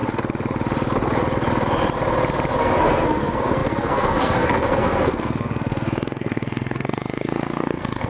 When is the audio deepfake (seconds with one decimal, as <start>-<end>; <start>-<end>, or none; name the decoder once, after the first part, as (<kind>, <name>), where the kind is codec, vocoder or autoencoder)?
2.6-8.1 (codec, SNAC)